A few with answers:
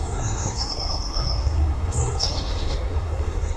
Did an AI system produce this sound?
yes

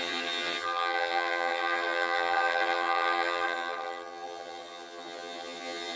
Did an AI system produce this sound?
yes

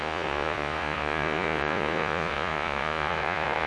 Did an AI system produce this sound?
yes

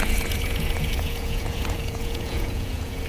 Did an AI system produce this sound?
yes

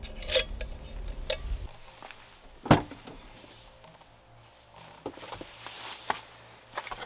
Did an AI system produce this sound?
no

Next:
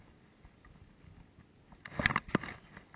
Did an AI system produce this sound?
no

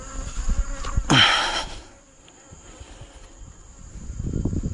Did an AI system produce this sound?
no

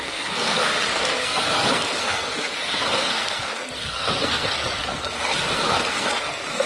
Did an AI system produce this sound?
yes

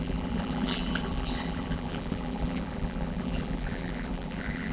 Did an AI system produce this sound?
yes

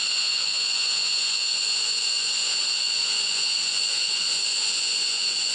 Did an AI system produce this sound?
yes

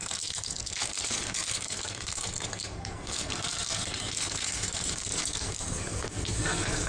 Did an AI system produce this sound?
yes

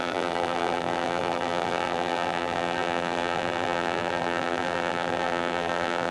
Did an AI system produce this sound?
yes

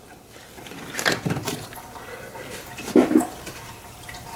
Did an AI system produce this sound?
no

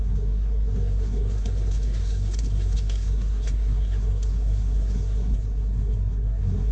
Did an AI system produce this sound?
yes